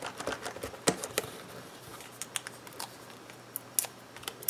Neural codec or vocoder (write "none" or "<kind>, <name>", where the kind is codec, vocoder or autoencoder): none